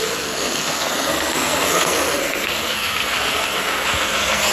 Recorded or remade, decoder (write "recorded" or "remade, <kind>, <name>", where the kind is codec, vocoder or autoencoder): remade, codec, SNAC